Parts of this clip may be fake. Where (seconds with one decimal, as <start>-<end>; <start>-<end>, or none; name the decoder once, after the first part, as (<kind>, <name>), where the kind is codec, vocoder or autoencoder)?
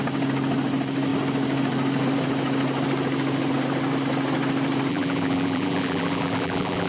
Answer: 4.9-6.9 (vocoder, BigVGAN v2)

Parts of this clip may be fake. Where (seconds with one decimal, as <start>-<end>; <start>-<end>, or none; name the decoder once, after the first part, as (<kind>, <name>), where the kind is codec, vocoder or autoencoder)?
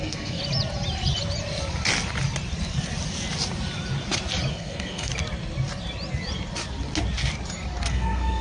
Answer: 0.0-0.4 (codec, SNAC); 4.5-5.1; 7.9-8.4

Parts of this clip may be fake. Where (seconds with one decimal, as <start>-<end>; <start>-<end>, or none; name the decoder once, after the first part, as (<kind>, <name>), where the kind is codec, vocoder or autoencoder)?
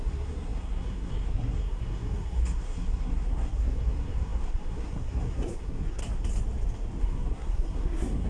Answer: 0.0-6.0 (codec, SNAC); 7.0-8.3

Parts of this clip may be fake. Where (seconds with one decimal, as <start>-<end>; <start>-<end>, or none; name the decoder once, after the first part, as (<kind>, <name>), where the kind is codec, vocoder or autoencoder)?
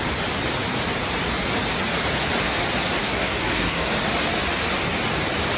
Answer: 3.0-3.9 (codec, SNAC)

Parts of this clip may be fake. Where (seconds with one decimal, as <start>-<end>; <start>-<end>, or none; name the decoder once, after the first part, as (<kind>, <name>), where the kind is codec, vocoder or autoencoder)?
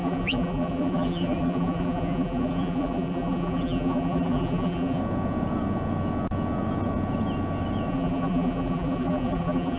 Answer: 0.0-5.0 (vocoder, BigVGAN v2); 7.9-9.8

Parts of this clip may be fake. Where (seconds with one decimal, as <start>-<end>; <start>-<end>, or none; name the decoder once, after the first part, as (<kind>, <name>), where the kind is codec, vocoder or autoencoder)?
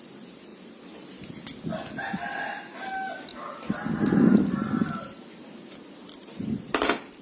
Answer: none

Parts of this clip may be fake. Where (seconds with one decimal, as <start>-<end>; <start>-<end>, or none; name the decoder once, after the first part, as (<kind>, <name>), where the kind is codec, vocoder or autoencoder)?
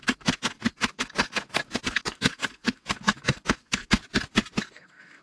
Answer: 0.0-4.0 (codec, SNAC); 4.6-5.2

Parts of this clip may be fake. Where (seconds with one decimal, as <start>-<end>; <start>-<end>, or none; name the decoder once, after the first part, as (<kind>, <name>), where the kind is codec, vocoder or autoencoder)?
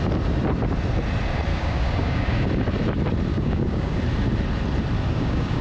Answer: 1.5-2.5 (codec, DAC); 3.3-4.0; 5.1-5.6